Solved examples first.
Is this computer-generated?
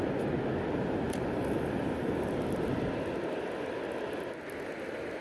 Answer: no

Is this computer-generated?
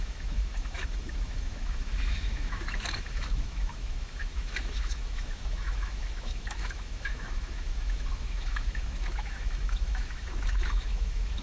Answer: yes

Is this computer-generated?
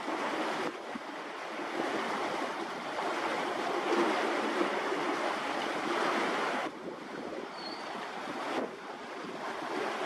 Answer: no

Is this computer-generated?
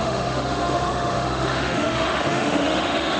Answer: yes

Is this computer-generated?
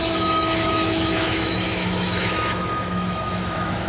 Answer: yes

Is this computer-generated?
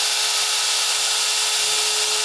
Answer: no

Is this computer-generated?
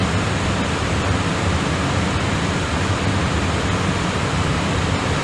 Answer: no